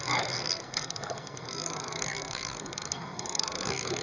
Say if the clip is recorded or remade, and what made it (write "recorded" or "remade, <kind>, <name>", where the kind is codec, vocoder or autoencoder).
remade, codec, SNAC